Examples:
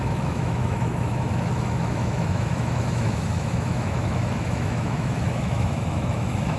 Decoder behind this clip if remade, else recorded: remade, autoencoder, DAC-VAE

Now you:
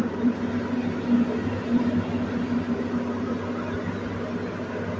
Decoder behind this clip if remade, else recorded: recorded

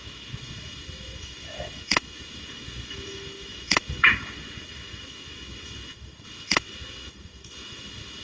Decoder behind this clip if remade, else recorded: remade, autoencoder, DAC-VAE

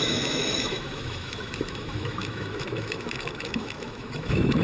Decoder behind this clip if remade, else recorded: remade, autoencoder, DAC-VAE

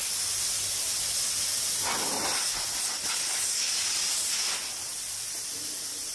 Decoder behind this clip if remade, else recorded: recorded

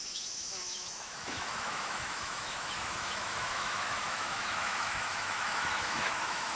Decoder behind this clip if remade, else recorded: remade, autoencoder, DAC-VAE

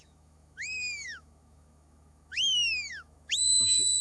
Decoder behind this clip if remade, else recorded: remade, autoencoder, DAC-VAE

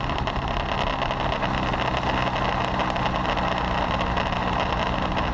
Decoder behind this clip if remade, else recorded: recorded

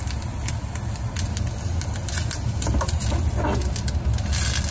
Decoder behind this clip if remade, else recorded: recorded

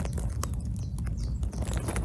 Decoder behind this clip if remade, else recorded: recorded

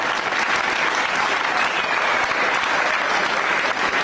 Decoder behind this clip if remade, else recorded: recorded